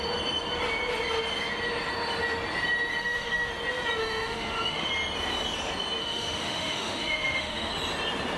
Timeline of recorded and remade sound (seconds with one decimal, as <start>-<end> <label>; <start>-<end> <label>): 0.0-3.0 recorded; 3.0-3.5 remade; 3.5-4.0 recorded; 4.0-4.9 remade; 4.9-6.0 recorded; 6.0-7.7 remade; 7.7-8.4 recorded